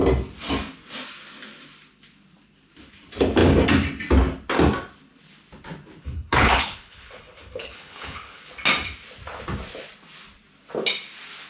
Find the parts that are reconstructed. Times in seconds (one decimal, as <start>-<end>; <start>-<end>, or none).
6.0-8.5